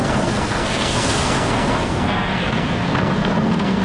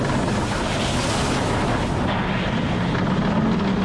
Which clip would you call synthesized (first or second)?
first